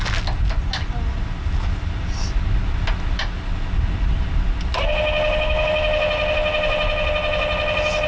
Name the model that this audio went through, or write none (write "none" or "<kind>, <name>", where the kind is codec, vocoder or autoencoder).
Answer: none